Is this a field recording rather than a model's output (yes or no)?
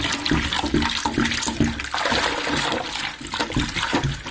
yes